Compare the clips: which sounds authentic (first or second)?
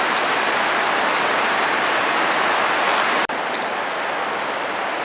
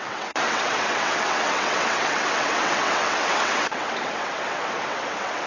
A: first